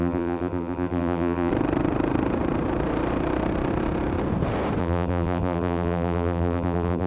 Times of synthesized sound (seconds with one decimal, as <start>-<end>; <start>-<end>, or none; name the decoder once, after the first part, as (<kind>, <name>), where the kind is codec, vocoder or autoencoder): 0.0-1.5 (vocoder, BigVGAN v2); 4.8-7.1